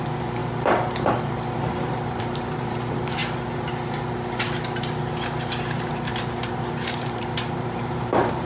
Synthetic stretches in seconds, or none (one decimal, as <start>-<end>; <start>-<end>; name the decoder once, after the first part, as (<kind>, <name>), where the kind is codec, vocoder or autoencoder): 0.0-3.2 (vocoder, BigVGAN v2); 7.0-8.4